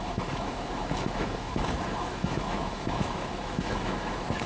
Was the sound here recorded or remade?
remade